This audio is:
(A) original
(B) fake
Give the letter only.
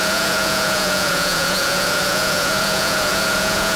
B